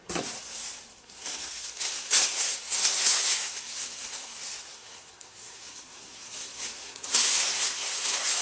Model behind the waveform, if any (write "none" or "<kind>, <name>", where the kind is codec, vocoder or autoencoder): codec, SNAC